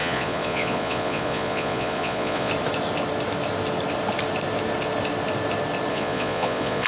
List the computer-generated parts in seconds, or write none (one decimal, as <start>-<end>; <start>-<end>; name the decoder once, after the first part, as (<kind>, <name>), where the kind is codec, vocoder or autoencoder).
0.0-2.5 (vocoder, Vocos); 5.9-6.9

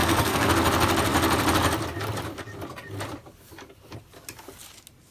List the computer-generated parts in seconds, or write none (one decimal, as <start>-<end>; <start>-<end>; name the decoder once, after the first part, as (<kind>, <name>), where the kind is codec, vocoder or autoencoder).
0.0-0.5 (codec, SNAC)

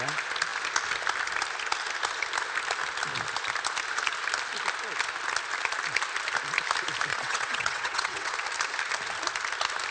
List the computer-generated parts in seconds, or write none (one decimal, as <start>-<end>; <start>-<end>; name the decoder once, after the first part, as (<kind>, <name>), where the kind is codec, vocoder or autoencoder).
7.1-8.3 (vocoder, WaveNeXt)

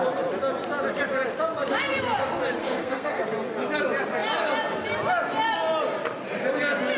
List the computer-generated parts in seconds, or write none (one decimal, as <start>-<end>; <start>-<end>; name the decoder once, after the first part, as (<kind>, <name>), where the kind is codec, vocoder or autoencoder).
2.6-3.2 (codec, SNAC)

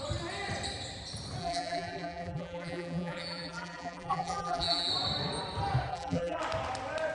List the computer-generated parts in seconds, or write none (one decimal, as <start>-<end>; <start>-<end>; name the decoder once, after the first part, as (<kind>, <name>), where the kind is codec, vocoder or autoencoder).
1.4-4.9 (vocoder, BigVGAN v2); 5.9-6.4